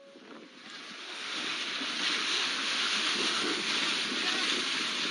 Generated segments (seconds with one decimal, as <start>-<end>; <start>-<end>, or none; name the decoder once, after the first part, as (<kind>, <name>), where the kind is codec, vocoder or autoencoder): 1.0-1.6 (autoencoder, DAC-VAE); 2.2-3.7